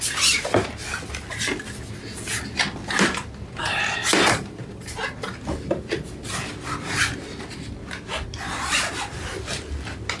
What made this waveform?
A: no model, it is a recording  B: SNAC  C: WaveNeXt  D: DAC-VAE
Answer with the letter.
A